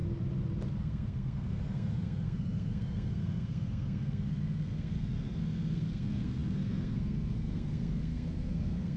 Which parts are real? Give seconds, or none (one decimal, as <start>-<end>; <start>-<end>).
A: 0.0-0.8